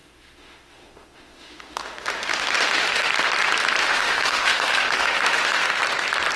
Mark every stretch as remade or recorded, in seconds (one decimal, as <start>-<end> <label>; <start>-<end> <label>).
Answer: 0.0-3.1 remade; 3.1-3.8 recorded; 3.8-5.8 remade; 5.8-6.4 recorded